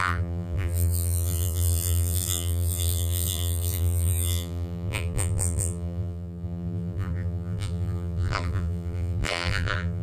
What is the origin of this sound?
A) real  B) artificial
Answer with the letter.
B